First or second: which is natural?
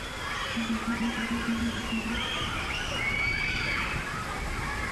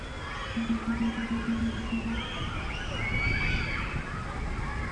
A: second